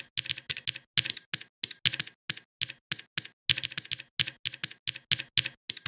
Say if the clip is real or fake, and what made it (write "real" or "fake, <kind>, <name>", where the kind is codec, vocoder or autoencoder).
real